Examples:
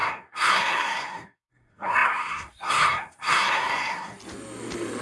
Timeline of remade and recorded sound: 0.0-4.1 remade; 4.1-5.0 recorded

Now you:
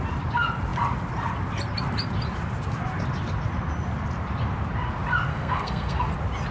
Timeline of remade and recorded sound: 0.0-5.3 recorded; 5.3-6.1 remade; 6.1-6.5 recorded

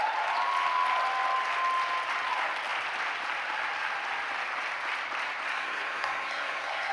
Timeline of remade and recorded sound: 0.0-5.5 recorded; 5.5-6.9 remade

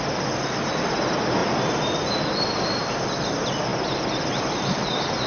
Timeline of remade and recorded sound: 0.0-5.3 recorded

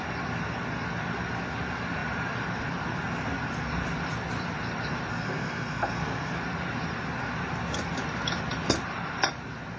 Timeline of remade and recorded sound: 0.0-5.1 recorded; 5.1-6.3 remade; 6.3-9.8 recorded

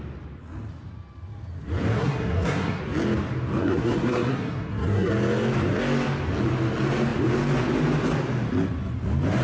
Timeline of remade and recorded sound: 0.0-1.9 recorded; 1.9-2.8 remade; 2.8-3.6 recorded; 3.6-5.1 remade; 5.1-9.4 recorded

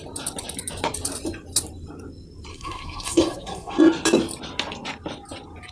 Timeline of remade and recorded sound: 0.0-2.5 recorded; 2.5-3.8 remade; 3.8-5.7 recorded